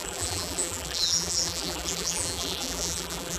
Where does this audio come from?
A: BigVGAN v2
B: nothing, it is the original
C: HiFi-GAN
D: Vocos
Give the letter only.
A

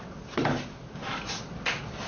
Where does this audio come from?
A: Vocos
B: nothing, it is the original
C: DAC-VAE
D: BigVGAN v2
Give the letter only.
B